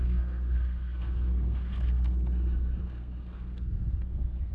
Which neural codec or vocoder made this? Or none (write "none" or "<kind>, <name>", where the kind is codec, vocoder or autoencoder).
codec, SNAC